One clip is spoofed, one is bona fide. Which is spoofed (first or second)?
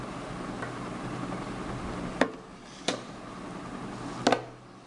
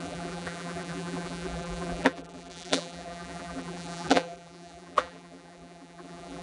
second